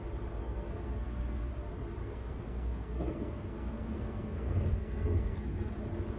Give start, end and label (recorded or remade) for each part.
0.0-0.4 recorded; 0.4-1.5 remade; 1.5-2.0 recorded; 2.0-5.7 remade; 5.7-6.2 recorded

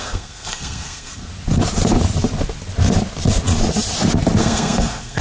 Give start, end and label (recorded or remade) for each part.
0.0-1.3 remade; 1.3-4.4 recorded; 4.4-5.2 remade